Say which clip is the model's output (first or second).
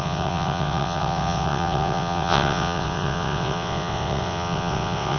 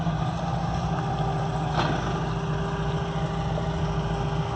first